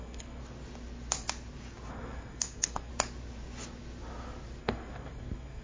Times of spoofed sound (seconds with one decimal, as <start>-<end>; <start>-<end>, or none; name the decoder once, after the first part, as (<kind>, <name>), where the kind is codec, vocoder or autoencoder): 0.0-0.4 (codec, SNAC); 1.9-2.9; 4.6-5.6